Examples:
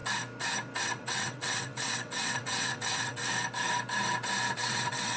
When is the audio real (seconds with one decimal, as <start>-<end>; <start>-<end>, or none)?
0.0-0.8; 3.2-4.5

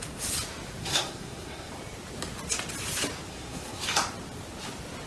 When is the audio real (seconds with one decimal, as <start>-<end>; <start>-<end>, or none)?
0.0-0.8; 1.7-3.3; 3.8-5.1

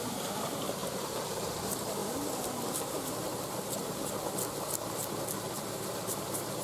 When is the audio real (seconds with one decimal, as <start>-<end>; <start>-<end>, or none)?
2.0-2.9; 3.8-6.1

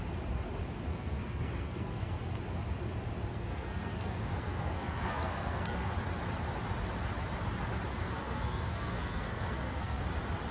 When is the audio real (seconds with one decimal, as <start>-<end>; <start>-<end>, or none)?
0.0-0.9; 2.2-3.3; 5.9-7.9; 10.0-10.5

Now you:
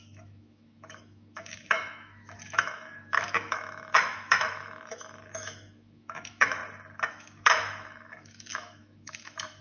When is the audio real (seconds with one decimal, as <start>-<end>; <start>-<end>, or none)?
6.6-7.1